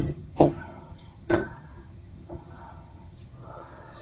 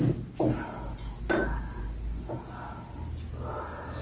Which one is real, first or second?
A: second